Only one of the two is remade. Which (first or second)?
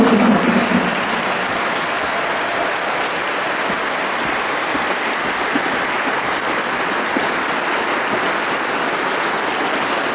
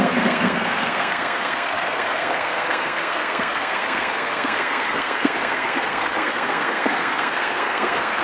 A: second